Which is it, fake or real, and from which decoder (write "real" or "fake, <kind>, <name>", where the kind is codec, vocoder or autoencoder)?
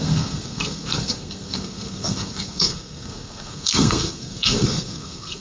fake, codec, SNAC